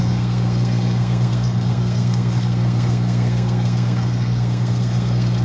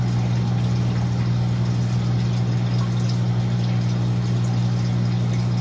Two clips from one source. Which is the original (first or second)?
second